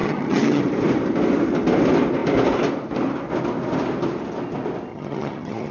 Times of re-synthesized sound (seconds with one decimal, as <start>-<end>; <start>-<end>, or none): 0.0-0.6; 4.9-5.7